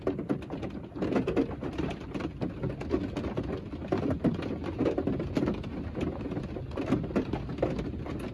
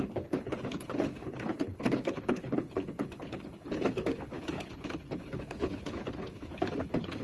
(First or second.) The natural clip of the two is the first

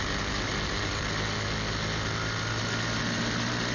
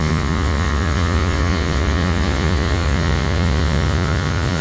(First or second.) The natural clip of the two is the first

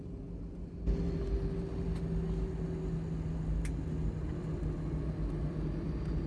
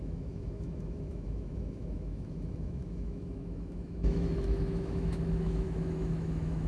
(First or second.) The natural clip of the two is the first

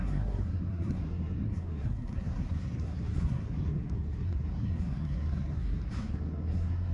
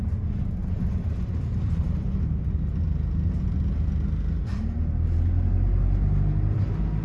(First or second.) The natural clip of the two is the second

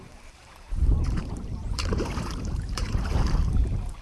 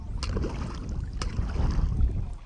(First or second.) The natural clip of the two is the second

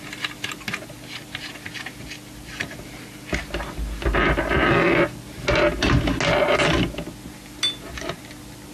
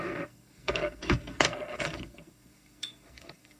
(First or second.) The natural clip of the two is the first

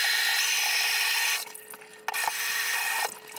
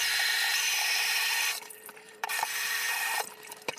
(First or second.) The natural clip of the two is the first